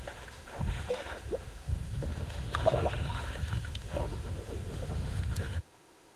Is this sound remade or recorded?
remade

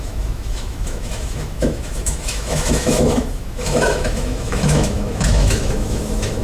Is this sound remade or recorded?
remade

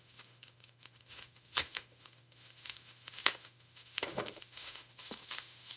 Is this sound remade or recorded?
remade